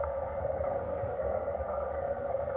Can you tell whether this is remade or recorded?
remade